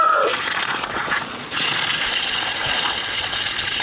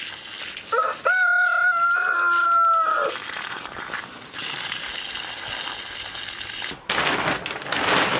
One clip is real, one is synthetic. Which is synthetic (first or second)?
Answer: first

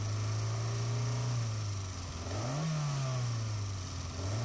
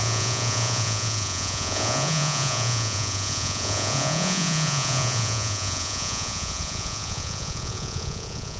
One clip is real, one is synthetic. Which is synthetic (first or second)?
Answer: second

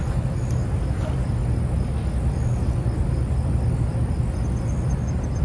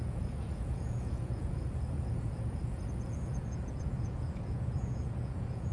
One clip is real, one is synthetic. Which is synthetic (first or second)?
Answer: second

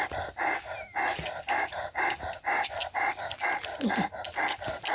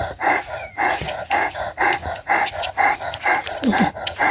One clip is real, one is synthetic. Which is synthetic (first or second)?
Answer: second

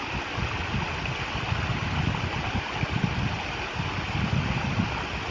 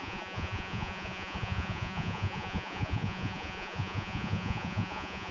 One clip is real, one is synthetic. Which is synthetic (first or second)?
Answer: second